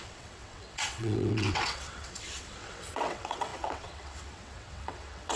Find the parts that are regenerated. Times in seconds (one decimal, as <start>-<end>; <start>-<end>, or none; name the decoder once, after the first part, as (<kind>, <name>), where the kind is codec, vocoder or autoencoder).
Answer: 0.0-5.4 (vocoder, WaveNeXt)